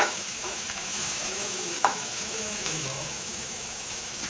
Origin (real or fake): fake